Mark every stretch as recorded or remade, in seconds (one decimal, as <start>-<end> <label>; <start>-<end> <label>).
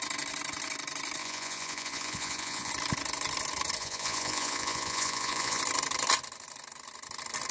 0.0-1.2 recorded; 1.2-2.7 remade; 2.7-3.8 recorded; 3.8-5.6 remade; 5.6-7.5 recorded